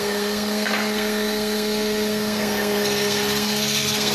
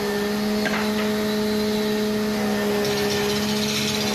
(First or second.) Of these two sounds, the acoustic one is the second